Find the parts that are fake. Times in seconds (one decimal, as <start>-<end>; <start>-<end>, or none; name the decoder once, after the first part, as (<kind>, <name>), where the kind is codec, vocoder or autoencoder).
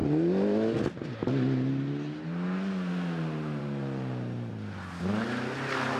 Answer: none